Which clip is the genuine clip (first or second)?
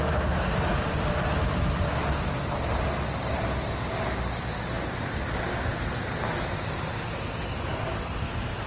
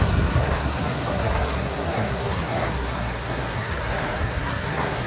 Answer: first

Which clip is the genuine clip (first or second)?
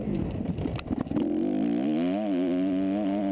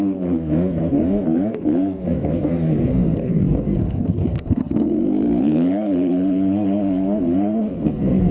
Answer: first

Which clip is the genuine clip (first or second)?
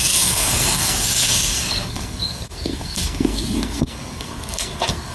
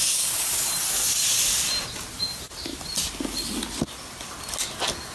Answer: second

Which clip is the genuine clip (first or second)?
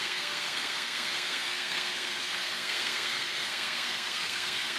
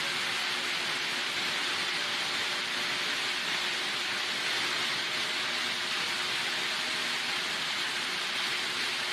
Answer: second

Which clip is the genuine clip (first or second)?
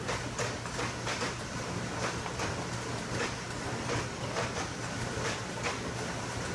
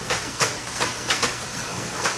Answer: first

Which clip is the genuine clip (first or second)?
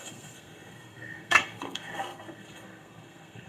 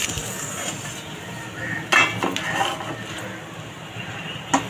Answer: second